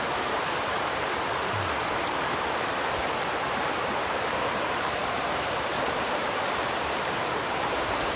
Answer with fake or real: fake